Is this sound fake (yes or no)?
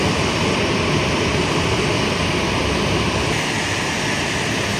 no